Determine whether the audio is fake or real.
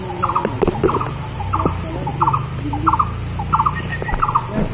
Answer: real